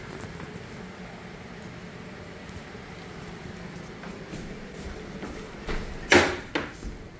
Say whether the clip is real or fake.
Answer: real